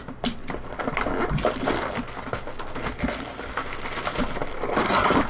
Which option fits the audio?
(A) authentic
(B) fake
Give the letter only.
A